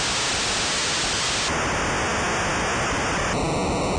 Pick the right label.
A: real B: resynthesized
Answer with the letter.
A